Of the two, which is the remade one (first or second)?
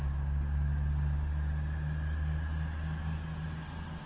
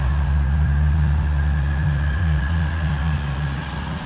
second